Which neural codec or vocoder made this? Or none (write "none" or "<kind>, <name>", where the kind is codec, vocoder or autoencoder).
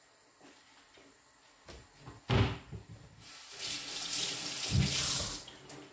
none